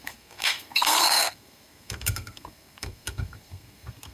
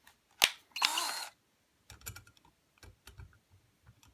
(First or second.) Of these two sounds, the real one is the second